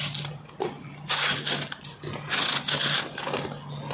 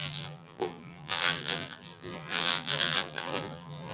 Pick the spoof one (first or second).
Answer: second